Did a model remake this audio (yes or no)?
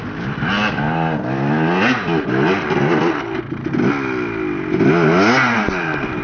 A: no